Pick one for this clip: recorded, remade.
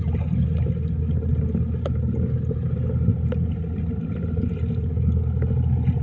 recorded